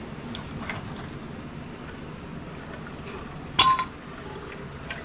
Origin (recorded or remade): recorded